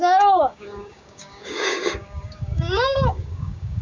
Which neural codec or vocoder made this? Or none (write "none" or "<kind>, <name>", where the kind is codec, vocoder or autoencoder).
codec, DAC